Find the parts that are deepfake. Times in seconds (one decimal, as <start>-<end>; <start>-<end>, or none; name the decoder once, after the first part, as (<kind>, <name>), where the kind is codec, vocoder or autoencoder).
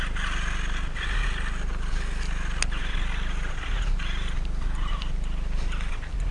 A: none